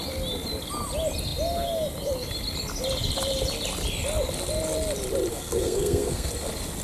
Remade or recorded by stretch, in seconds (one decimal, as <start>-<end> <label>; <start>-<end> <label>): 0.0-5.3 recorded; 5.3-6.3 remade; 6.3-6.8 recorded